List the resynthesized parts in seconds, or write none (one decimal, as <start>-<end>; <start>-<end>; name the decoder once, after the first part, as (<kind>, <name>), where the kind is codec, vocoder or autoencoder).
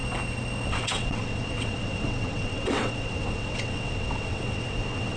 0.7-5.2 (vocoder, WaveNeXt)